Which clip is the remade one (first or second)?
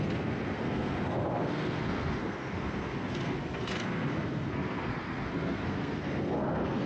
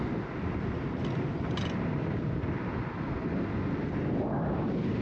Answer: first